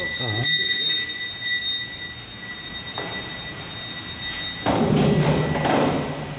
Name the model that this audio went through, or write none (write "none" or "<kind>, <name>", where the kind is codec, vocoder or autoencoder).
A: none